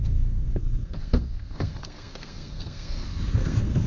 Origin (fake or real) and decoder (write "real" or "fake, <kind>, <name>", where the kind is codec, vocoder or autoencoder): fake, codec, SNAC